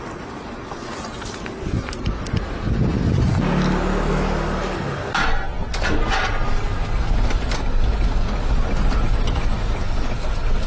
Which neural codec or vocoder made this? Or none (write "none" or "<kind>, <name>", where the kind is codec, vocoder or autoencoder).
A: none